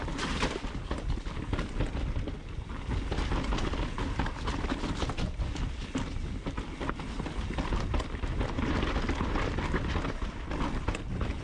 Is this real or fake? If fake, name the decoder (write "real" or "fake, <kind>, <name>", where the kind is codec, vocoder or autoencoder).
real